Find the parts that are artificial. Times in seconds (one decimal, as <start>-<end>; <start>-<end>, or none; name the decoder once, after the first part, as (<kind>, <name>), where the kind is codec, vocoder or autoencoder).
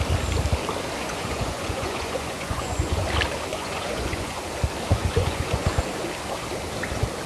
1.0-3.0 (vocoder, Vocos); 3.5-4.4; 4.9-5.8